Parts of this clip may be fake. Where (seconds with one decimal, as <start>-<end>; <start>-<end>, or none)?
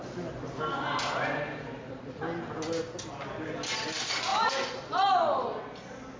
none